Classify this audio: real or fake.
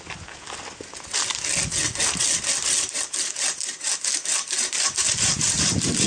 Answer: real